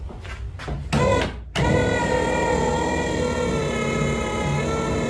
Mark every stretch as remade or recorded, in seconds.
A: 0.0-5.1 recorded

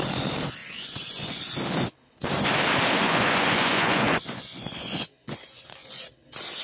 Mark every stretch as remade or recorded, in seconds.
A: 0.0-0.6 recorded; 0.6-1.4 remade; 1.4-3.0 recorded; 3.0-6.1 remade; 6.1-6.6 recorded

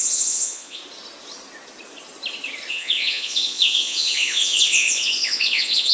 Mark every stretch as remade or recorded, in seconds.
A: 0.0-0.8 remade; 0.8-2.7 recorded; 2.7-5.9 remade